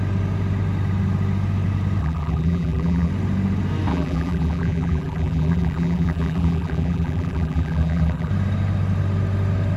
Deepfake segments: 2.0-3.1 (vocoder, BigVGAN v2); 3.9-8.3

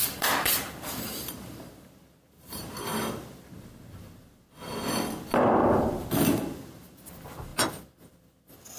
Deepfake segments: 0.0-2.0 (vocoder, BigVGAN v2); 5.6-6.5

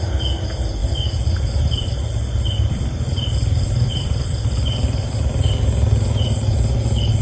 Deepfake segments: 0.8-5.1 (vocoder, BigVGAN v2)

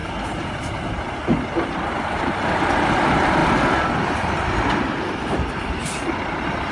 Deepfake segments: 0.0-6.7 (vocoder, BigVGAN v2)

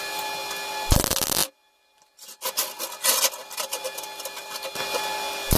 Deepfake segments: none

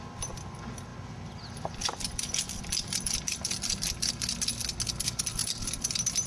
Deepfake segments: 0.0-4.2 (vocoder, BigVGAN v2); 5.0-6.3